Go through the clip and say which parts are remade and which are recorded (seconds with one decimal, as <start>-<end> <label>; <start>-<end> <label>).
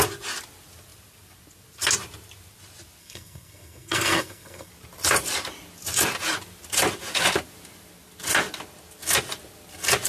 0.0-3.0 recorded; 3.0-4.7 remade; 4.7-10.1 recorded